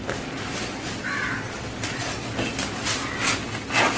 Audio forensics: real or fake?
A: real